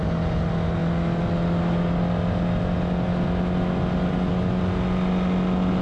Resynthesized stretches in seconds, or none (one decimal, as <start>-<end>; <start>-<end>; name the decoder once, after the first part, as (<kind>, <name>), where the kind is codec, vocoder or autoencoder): none